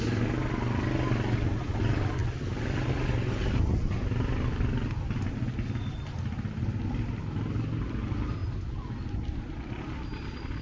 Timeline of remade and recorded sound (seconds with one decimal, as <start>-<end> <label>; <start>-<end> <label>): 0.0-10.6 recorded